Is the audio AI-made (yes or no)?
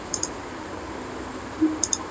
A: no